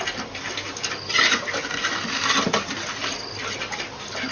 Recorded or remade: recorded